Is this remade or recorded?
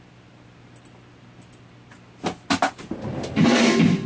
recorded